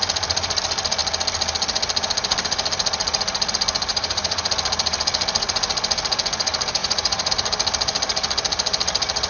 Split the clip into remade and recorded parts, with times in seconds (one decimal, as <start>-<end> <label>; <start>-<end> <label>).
0.0-3.9 recorded; 3.9-4.5 remade; 4.5-6.8 recorded; 6.8-7.3 remade; 7.3-9.3 recorded